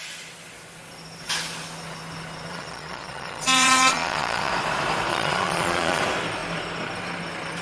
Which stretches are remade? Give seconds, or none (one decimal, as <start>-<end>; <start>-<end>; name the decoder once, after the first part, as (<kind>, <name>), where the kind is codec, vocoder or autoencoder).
2.5-4.5 (vocoder, Vocos); 5.1-6.0